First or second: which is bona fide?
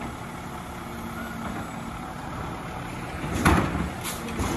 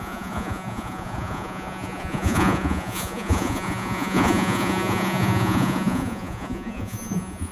first